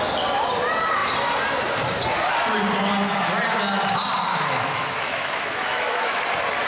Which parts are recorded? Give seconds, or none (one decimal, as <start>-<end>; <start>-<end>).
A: 0.0-4.3; 6.2-6.7